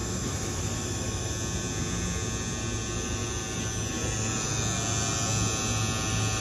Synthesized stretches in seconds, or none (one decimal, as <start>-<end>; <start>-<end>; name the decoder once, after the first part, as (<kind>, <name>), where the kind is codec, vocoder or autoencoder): 0.0-1.3 (autoencoder, DAC-VAE)